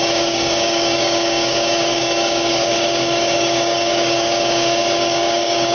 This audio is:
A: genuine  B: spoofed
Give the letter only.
B